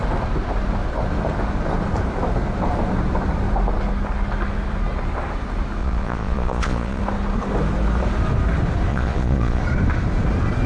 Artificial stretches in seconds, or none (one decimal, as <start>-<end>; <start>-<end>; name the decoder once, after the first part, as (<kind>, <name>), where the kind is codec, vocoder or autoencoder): 5.8-7.0 (vocoder, Vocos); 8.9-9.6